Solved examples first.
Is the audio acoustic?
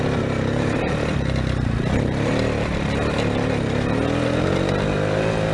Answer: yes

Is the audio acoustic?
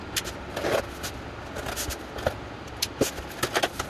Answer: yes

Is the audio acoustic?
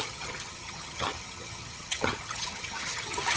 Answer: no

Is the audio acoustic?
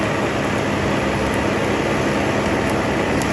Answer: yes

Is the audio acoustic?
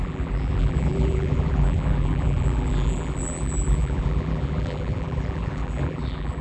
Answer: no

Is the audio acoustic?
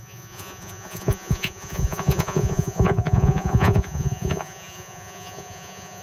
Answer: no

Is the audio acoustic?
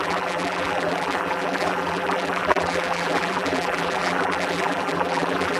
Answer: no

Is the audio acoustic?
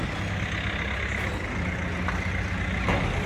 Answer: yes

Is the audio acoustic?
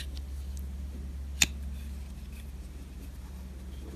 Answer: yes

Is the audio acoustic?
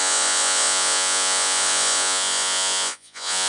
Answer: no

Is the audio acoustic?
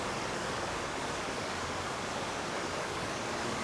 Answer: no